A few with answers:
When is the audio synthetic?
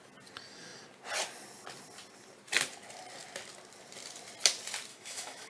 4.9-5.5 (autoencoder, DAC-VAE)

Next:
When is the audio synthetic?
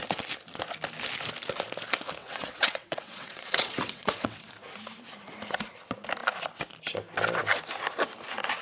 2.2-4.5 (vocoder, WaveNeXt)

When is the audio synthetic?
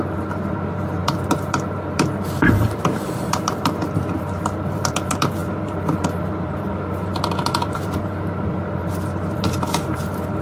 0.0-10.4 (vocoder, BigVGAN v2)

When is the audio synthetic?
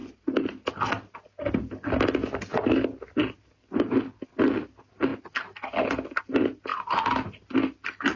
0.0-0.7 (vocoder, BigVGAN v2)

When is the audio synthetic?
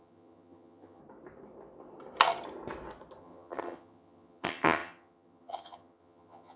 0.0-1.0 (vocoder, HiFi-GAN); 3.2-6.6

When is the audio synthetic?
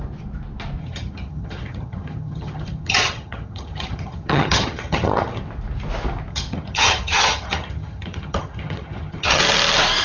0.8-5.4 (vocoder, HiFi-GAN); 6.3-9.4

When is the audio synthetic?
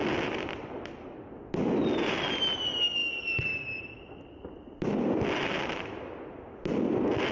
none